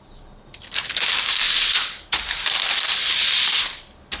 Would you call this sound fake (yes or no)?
no